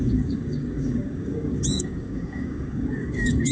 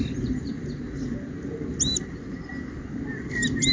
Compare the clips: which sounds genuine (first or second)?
second